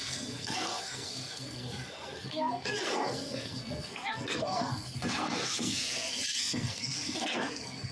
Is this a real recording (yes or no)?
no